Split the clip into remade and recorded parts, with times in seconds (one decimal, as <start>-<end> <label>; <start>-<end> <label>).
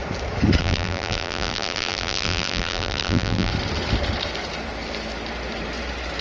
0.0-0.6 recorded; 0.6-3.5 remade; 3.5-6.2 recorded